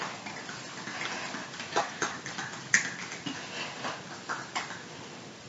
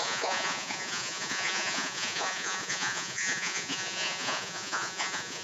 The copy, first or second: second